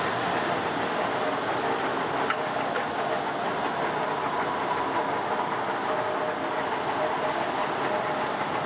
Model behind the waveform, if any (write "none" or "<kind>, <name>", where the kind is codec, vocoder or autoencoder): none